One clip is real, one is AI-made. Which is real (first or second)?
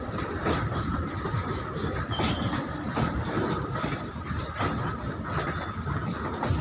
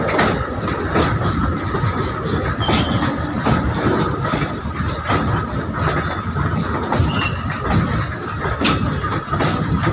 second